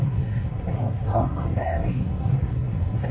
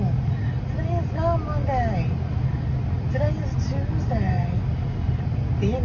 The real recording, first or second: second